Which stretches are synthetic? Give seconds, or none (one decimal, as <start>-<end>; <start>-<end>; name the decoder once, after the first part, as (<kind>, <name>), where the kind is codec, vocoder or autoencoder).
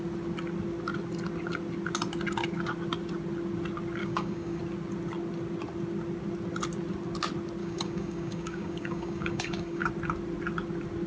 4.0-4.6 (codec, DAC); 7.6-9.9